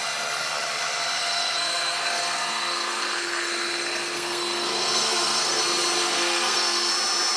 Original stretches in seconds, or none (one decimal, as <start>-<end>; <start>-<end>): 0.0-1.2; 5.6-6.0; 6.9-7.4